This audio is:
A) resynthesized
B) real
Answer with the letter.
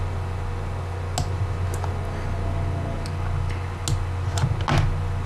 B